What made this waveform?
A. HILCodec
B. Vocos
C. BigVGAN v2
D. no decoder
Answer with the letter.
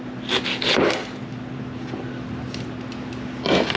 D